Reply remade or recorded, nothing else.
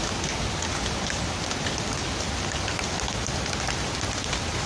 recorded